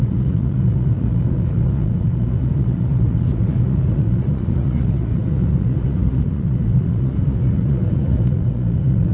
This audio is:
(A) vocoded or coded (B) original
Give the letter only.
A